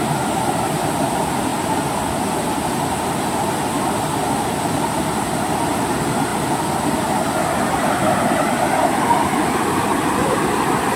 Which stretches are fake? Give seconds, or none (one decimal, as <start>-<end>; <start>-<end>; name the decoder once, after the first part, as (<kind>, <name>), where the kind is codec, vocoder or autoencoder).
none